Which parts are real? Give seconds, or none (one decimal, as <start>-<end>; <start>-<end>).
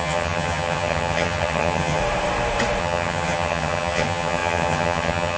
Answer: 2.0-2.8